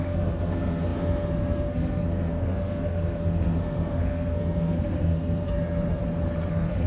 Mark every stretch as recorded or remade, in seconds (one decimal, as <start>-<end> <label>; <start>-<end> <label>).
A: 0.0-6.0 remade; 6.0-6.5 recorded; 6.5-6.9 remade